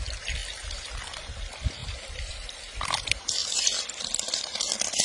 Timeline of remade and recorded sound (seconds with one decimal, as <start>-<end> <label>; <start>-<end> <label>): 0.0-3.4 remade; 3.4-4.0 recorded; 4.0-5.0 remade